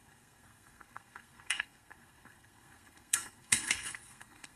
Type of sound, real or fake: fake